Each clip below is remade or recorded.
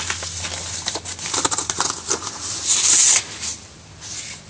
recorded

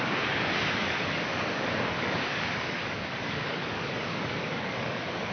remade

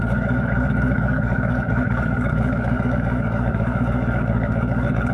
remade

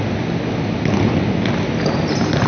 recorded